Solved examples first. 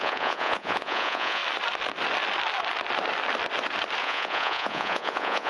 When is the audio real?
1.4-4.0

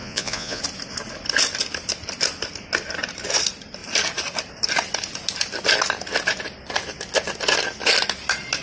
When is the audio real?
0.6-8.6